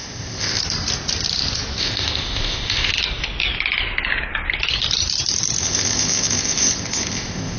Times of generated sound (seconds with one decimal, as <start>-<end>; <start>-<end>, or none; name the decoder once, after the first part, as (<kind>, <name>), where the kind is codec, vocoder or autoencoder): 0.0-0.6 (codec, ZipCodec); 1.8-2.9; 5.6-7.6